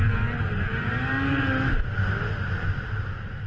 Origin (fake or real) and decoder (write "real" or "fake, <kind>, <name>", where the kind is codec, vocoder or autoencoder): real